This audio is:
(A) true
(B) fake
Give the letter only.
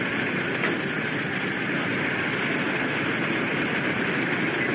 A